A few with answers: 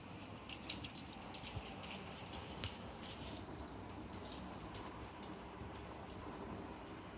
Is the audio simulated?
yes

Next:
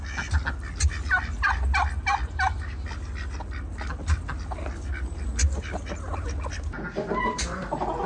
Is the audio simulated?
no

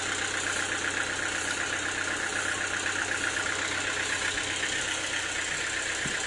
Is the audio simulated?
no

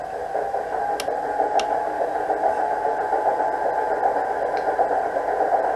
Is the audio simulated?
no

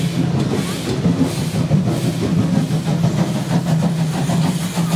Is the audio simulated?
no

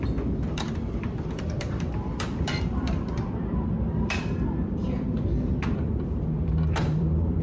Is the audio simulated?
yes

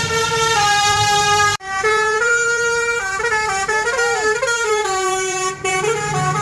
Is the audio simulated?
yes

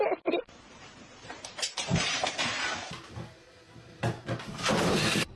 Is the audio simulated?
yes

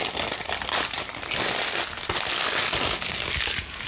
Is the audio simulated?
no